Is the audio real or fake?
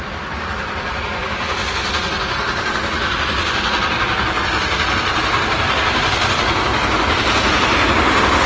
real